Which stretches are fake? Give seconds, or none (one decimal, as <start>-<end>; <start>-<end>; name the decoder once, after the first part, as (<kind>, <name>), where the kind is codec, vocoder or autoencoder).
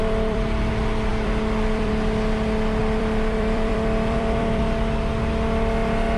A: 0.0-0.7 (vocoder, BigVGAN v2); 1.1-1.9; 2.8-4.6